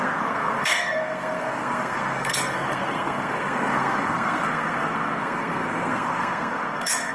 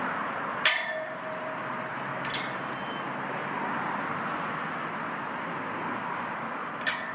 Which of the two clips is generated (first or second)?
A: first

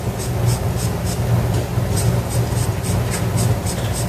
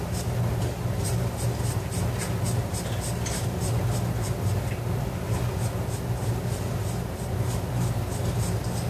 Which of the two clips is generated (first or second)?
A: second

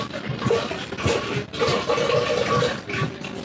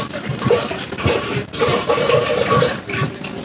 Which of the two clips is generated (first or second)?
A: second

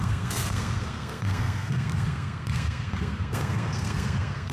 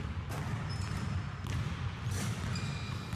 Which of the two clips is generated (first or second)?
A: first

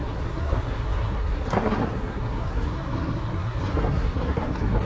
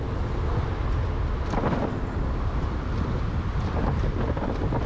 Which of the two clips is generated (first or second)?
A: first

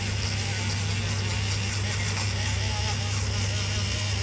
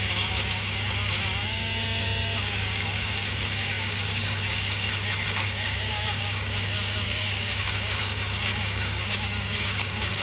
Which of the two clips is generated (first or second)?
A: second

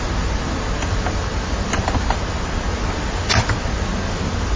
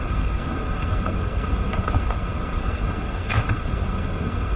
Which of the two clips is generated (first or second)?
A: second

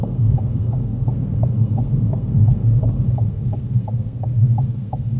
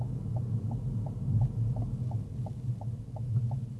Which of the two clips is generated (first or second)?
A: first